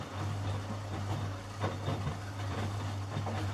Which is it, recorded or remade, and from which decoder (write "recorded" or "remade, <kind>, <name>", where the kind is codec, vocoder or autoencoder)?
recorded